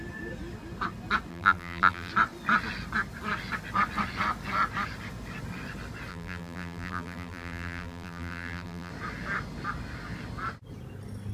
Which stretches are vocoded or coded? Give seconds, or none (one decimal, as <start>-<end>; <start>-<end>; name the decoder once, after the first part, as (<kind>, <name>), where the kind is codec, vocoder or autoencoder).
1.3-2.1 (vocoder, BigVGAN v2); 6.1-8.9